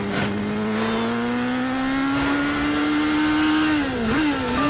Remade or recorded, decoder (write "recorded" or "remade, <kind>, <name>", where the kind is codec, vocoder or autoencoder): recorded